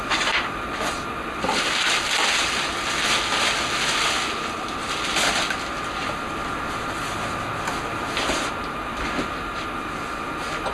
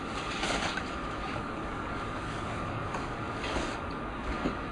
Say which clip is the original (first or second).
first